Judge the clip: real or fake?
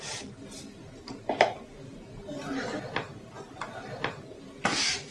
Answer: real